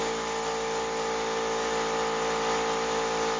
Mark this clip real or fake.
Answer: real